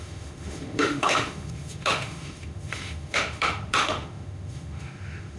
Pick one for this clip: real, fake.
fake